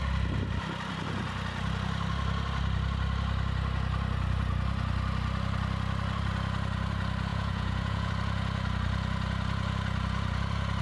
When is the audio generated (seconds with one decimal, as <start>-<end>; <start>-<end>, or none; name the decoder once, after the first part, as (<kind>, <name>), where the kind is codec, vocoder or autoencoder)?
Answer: 7.3-8.1 (vocoder, Vocos)